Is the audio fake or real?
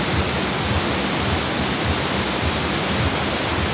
real